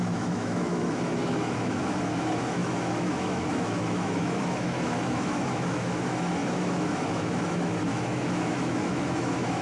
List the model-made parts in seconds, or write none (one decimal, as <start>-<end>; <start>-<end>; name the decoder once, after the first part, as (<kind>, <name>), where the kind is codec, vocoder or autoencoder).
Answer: 0.0-9.6 (autoencoder, DAC-VAE)